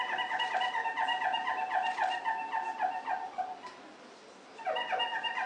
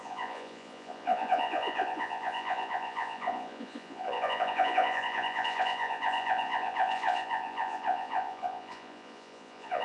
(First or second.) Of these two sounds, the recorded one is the first